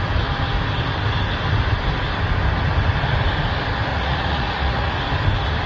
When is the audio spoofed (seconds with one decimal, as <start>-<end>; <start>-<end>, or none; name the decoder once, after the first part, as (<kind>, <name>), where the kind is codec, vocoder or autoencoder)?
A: 3.9-4.9 (vocoder, Vocos)